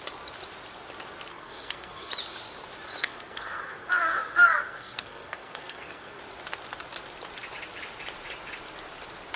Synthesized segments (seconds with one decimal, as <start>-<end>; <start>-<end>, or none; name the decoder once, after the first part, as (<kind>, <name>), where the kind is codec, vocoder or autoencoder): 1.3-2.1 (codec, SNAC); 3.0-6.2